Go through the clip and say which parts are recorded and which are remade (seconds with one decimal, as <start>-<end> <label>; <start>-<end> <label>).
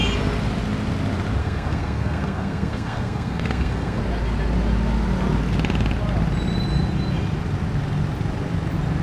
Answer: 0.0-1.4 recorded; 1.4-4.0 remade; 4.0-9.0 recorded